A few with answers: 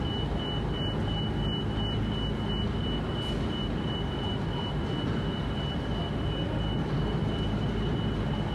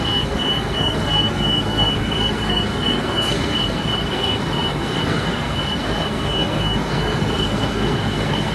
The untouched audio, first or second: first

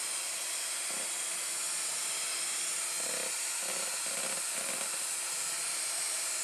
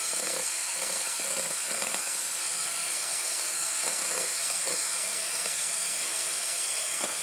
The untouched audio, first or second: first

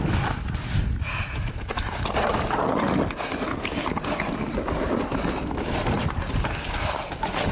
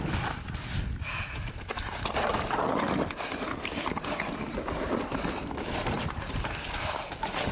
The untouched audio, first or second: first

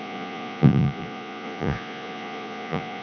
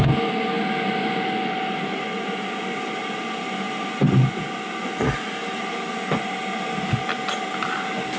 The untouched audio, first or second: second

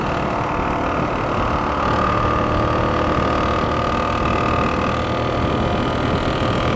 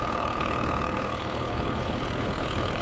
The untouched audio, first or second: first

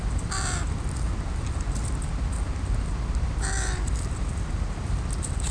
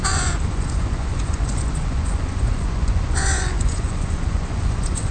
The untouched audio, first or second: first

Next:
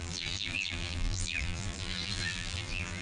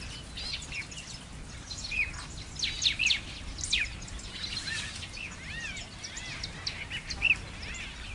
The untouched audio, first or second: second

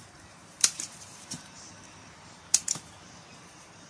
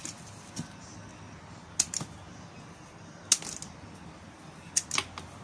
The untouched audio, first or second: second